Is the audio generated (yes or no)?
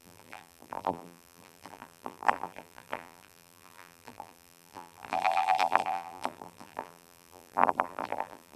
yes